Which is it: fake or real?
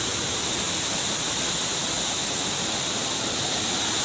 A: real